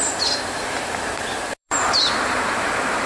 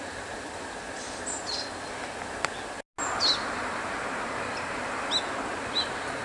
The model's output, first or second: first